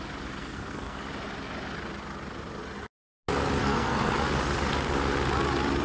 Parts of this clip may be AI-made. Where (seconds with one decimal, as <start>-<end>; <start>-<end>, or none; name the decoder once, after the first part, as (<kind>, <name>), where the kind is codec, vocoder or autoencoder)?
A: 0.4-1.0 (codec, SNAC); 3.6-4.1